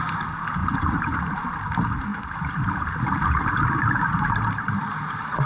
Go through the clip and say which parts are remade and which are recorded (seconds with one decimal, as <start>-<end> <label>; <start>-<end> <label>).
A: 0.0-0.6 recorded; 0.6-1.2 remade; 1.2-2.1 recorded; 2.1-5.5 remade

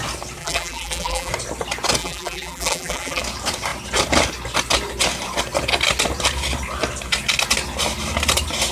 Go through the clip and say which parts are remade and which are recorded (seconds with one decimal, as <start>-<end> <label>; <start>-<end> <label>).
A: 0.0-0.4 recorded; 0.4-1.3 remade; 1.3-2.0 recorded; 2.0-3.2 remade; 3.2-8.7 recorded

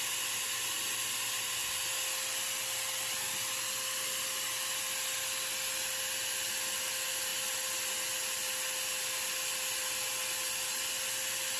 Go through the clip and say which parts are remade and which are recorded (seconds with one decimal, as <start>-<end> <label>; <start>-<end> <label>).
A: 0.0-11.6 recorded

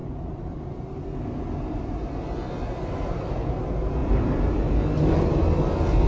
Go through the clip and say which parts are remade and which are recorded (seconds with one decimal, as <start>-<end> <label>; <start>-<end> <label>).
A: 0.0-0.6 remade; 0.6-3.0 recorded; 3.0-3.6 remade; 3.6-4.0 recorded; 4.0-4.6 remade; 4.6-6.1 recorded

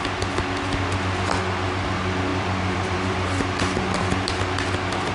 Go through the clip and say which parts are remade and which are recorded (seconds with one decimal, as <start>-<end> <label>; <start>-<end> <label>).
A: 0.0-2.3 recorded; 2.3-4.3 remade; 4.3-5.1 recorded